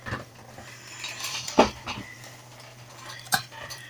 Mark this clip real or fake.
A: fake